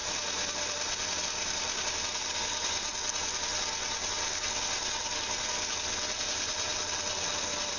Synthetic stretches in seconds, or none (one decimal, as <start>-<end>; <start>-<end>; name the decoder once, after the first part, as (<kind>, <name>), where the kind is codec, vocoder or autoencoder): 0.0-2.9 (vocoder, BigVGAN v2); 5.2-7.8